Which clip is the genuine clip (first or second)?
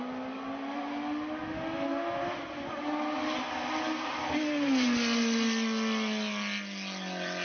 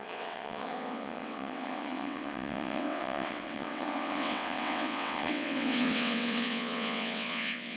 first